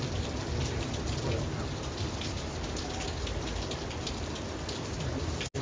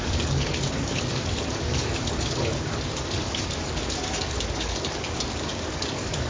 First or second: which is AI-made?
second